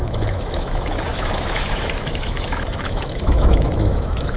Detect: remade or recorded remade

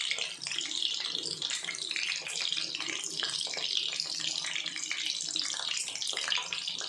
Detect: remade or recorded recorded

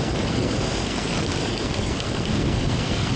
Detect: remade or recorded remade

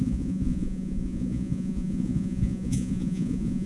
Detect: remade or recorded remade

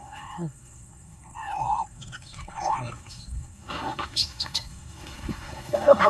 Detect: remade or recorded remade